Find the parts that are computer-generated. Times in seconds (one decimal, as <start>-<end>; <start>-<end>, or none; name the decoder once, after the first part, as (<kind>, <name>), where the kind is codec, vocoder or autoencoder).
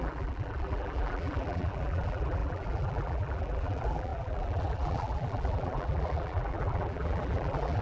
0.0-7.8 (vocoder, BigVGAN v2)